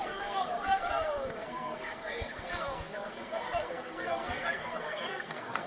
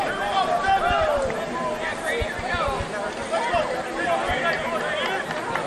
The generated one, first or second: first